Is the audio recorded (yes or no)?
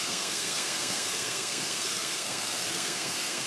no